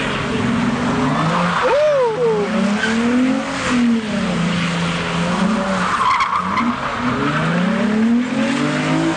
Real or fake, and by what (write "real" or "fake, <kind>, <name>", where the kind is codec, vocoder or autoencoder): real